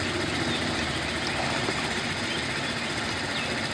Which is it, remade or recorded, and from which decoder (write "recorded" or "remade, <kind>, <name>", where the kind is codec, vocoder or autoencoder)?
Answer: recorded